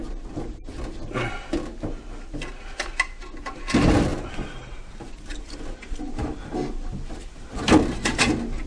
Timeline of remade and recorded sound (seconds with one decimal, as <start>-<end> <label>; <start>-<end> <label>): 0.0-4.1 recorded; 4.1-6.5 remade; 6.5-8.7 recorded